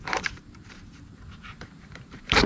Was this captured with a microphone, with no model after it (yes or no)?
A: no